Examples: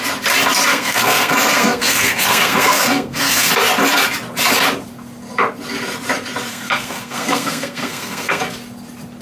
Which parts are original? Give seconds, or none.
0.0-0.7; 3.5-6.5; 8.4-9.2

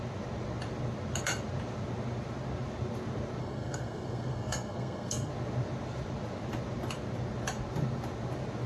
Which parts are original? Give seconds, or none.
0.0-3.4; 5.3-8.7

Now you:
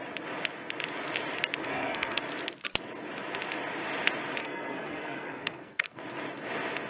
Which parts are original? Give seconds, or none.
0.0-1.6; 2.2-4.4; 6.0-6.9